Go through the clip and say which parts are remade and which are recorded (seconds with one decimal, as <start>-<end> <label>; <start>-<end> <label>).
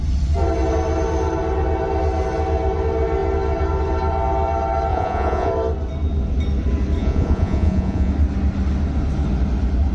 0.0-4.9 recorded; 4.9-5.5 remade; 5.5-7.0 recorded; 7.0-8.1 remade; 8.1-9.9 recorded